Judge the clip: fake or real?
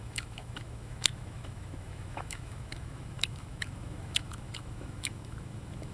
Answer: fake